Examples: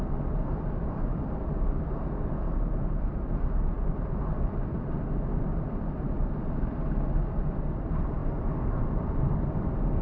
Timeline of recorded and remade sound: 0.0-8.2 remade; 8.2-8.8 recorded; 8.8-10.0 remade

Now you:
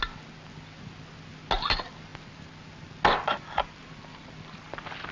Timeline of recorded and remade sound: 0.0-5.1 recorded

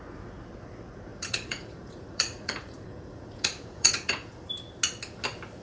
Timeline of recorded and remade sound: 0.0-1.1 recorded; 1.1-4.5 remade; 4.5-5.6 recorded

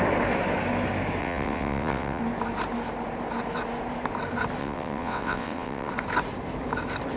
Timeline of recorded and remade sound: 0.0-1.2 recorded; 1.2-2.2 remade; 2.2-4.6 recorded; 4.6-5.9 remade; 5.9-7.2 recorded